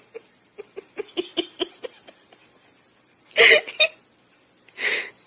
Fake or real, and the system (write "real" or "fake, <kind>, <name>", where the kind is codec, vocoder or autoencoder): real